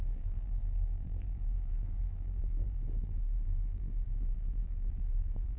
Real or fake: fake